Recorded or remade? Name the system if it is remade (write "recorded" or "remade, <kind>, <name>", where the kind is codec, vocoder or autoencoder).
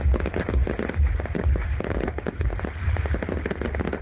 recorded